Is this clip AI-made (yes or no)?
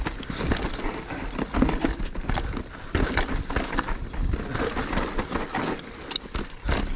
no